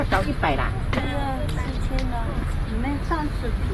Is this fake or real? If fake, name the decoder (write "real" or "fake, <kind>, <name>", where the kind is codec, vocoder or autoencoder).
real